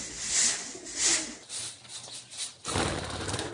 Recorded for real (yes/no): yes